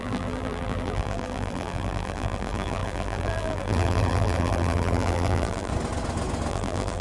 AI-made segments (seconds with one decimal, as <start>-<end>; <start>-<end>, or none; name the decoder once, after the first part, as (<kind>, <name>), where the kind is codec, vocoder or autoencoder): 0.0-5.7 (vocoder, BigVGAN v2); 6.5-7.0